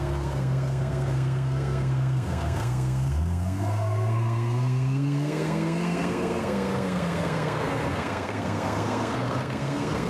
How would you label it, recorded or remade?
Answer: remade